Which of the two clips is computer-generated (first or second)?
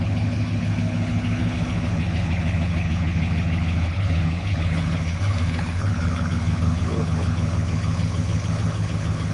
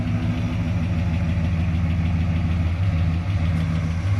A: first